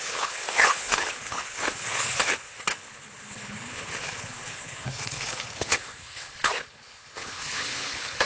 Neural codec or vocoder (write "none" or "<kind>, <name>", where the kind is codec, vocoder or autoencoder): codec, HILCodec